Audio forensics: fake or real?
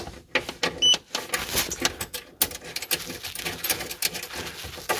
real